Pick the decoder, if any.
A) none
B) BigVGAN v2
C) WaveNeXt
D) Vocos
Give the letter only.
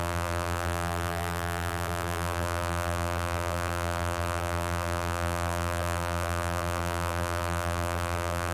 B